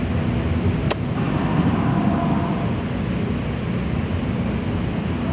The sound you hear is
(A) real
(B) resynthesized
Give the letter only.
A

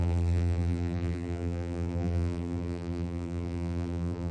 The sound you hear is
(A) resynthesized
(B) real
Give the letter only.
A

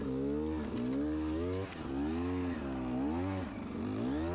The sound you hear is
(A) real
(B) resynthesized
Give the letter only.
A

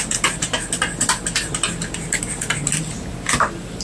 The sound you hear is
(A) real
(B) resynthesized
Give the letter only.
A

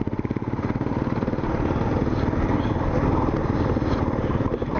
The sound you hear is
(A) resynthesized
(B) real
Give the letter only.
B